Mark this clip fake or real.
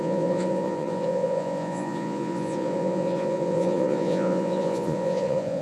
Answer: fake